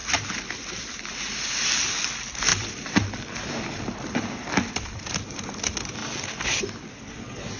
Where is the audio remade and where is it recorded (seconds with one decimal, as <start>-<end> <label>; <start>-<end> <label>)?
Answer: 0.0-1.5 remade; 1.5-2.5 recorded; 2.5-5.2 remade; 5.2-6.0 recorded; 6.0-7.0 remade; 7.0-7.6 recorded